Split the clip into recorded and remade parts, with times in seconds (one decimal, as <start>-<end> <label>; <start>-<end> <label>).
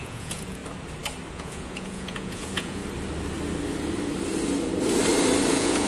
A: 0.0-0.6 remade; 0.6-1.3 recorded; 1.3-2.8 remade; 2.8-5.5 recorded; 5.5-5.9 remade